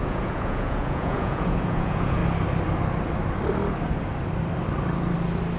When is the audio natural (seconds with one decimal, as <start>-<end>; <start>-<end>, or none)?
2.2-5.6